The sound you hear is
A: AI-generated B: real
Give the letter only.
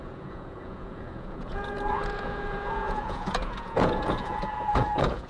A